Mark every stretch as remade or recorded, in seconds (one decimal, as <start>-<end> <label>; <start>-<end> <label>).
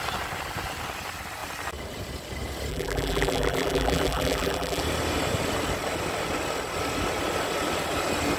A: 0.0-2.7 recorded; 2.7-4.8 remade; 4.8-8.4 recorded